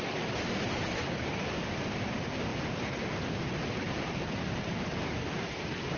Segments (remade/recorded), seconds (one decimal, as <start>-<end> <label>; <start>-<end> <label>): 0.0-6.0 remade

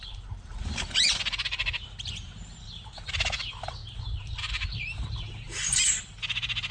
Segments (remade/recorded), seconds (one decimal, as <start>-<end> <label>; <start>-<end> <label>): 0.0-6.7 remade

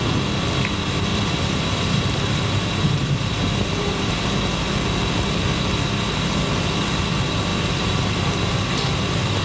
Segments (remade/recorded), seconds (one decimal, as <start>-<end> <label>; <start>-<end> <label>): 0.0-1.1 recorded; 1.1-4.4 remade; 4.4-7.5 recorded; 7.5-8.7 remade; 8.7-9.4 recorded

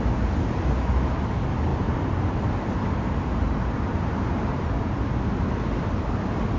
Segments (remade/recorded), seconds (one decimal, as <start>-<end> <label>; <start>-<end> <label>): 0.0-1.7 recorded; 1.7-5.4 remade; 5.4-6.6 recorded

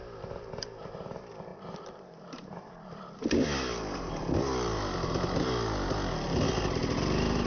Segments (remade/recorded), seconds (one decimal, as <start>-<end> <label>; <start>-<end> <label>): 0.0-1.5 recorded; 1.5-2.7 remade; 2.7-7.5 recorded

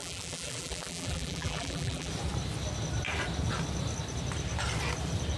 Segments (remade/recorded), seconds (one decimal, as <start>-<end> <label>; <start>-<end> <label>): 0.0-2.1 remade; 2.1-5.4 recorded

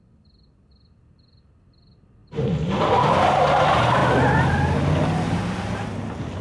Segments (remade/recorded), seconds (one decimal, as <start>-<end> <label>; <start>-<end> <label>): 0.0-6.4 recorded

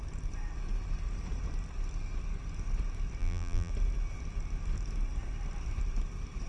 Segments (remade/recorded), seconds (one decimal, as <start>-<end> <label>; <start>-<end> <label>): 0.0-3.2 recorded; 3.2-3.7 remade; 3.7-6.5 recorded